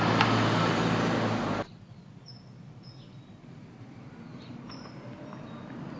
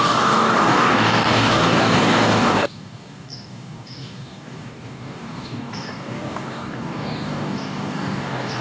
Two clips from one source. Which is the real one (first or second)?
first